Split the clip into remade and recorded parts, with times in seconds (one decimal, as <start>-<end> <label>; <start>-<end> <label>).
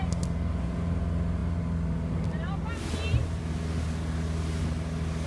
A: 0.0-5.3 recorded